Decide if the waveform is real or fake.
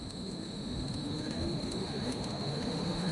fake